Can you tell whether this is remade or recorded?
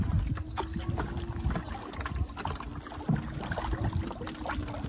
recorded